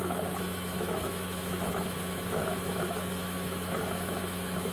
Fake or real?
fake